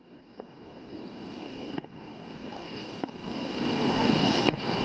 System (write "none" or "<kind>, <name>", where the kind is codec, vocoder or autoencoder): codec, DAC